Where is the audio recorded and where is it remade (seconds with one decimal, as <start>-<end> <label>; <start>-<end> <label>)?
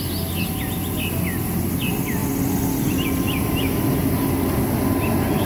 0.0-5.5 recorded